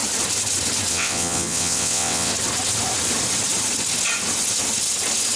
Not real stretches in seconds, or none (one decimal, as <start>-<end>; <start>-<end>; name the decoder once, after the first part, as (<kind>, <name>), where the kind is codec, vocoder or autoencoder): 0.9-2.3 (vocoder, WaveNeXt)